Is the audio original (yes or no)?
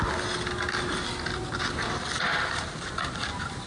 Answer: yes